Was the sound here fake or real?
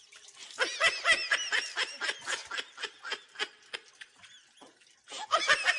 real